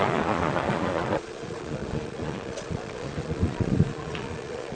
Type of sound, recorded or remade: remade